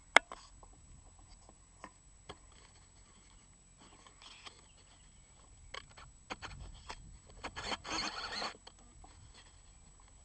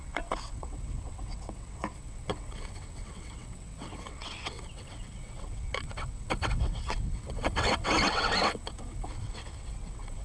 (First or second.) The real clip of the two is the first